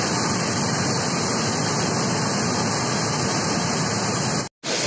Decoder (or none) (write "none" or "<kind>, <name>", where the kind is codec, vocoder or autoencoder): none